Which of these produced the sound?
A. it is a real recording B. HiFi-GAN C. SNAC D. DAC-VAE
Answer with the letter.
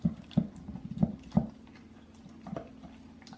A